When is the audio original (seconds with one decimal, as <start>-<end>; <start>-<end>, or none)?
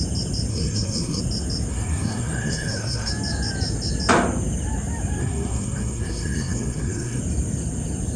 0.0-0.5; 1.2-1.7; 3.1-5.2; 7.2-8.2